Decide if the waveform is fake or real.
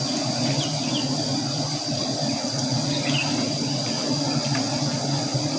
real